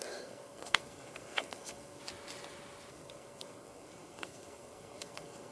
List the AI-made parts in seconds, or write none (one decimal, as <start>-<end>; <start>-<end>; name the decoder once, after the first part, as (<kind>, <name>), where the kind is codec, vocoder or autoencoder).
0.0-2.0 (codec, SNAC); 2.9-5.5